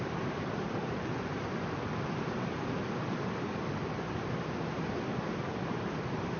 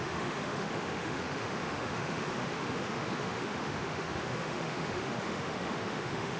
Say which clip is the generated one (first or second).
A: second